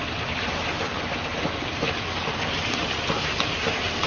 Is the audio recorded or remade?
recorded